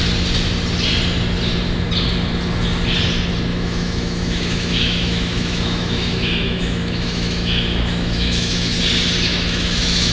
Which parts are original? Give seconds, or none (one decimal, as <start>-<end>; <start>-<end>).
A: 0.0-3.5; 8.8-9.3